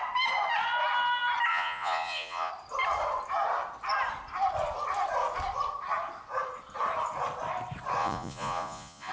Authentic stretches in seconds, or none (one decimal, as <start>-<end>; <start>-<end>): 0.0-1.5; 2.5-8.0